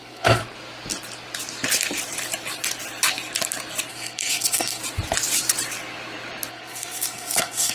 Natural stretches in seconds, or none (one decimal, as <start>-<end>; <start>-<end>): 0.4-3.9; 4.8-6.5